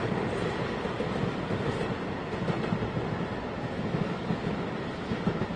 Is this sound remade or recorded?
recorded